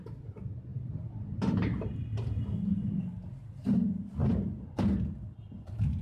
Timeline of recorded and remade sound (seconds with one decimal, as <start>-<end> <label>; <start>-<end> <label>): 0.0-0.7 recorded; 0.7-2.4 remade; 2.4-4.2 recorded; 4.2-4.7 remade; 4.7-6.0 recorded